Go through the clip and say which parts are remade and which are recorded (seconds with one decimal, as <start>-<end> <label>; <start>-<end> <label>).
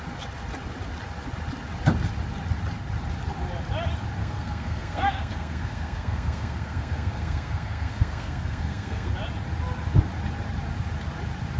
0.0-4.2 recorded; 4.2-9.1 remade; 9.1-11.6 recorded